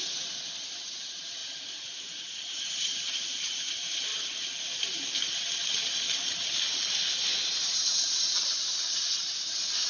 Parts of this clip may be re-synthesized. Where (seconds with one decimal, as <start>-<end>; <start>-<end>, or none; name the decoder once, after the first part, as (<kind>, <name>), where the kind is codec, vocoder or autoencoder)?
0.0-4.1 (vocoder, BigVGAN v2); 7.5-9.9